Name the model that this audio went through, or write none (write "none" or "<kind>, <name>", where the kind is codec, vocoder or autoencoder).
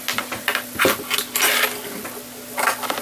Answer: none